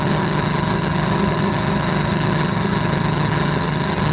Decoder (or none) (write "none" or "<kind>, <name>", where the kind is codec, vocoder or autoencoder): vocoder, HiFi-GAN